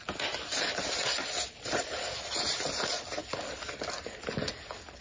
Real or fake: real